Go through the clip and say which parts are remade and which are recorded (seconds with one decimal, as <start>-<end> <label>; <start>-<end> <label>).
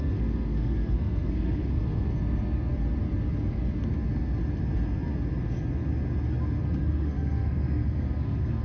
0.0-2.7 remade; 2.7-6.6 recorded; 6.6-8.6 remade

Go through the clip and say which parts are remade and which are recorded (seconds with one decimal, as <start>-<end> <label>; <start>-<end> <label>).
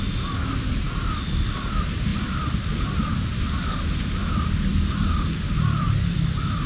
0.0-6.7 recorded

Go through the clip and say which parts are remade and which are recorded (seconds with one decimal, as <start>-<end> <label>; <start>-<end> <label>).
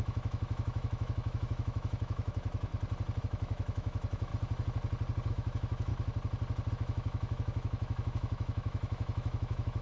0.0-2.7 remade; 2.7-3.2 recorded; 3.2-4.3 remade; 4.3-5.3 recorded; 5.3-5.9 remade; 5.9-6.7 recorded; 6.7-9.8 remade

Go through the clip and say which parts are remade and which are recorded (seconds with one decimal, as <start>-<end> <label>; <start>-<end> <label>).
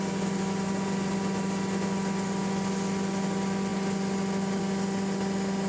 0.0-5.7 recorded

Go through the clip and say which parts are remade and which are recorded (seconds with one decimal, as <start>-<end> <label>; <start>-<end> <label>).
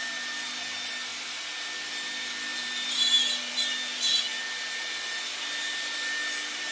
0.0-6.7 recorded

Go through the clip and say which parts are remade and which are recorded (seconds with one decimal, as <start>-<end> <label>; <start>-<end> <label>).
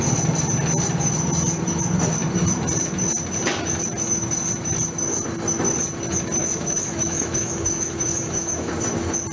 0.0-6.4 recorded; 6.4-8.7 remade; 8.7-9.3 recorded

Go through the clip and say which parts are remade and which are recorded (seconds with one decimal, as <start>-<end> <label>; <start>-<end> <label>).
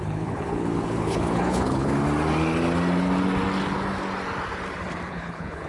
0.0-1.9 remade; 1.9-5.1 recorded; 5.1-5.7 remade